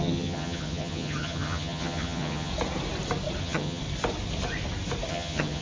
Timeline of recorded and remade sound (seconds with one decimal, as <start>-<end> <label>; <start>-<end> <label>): 0.0-2.5 remade; 2.5-3.4 recorded; 3.4-3.8 remade; 3.8-5.1 recorded; 5.1-5.6 remade